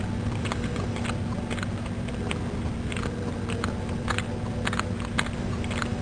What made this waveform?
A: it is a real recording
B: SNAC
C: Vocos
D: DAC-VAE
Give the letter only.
A